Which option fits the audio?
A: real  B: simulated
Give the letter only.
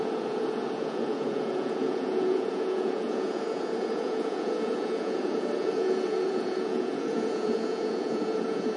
B